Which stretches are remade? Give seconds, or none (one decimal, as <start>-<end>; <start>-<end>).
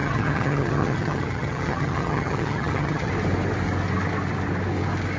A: 0.0-3.1